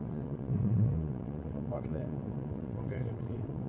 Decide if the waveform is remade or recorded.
remade